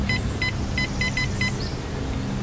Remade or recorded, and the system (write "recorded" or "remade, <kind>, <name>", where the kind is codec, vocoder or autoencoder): recorded